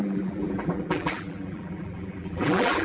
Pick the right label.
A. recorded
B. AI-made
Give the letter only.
B